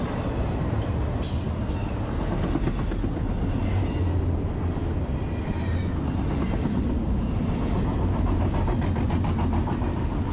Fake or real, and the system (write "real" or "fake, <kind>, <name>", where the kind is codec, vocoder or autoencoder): real